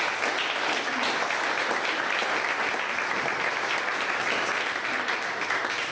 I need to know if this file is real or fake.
real